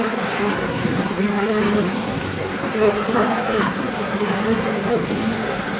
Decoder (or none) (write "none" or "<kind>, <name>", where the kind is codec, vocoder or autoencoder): codec, SNAC